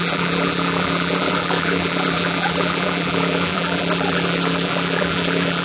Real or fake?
fake